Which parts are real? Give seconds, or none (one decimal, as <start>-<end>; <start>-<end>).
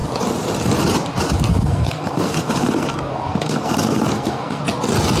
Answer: 0.0-1.5; 4.6-5.2